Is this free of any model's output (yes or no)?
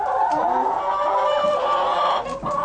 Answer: yes